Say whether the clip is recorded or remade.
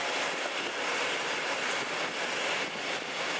recorded